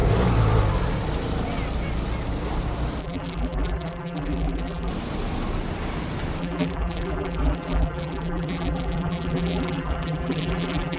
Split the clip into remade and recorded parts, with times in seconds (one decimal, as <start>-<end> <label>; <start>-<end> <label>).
0.0-3.0 recorded; 3.0-4.9 remade; 4.9-6.4 recorded; 6.4-11.0 remade